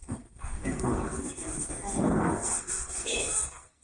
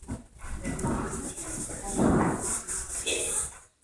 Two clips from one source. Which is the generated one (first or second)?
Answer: first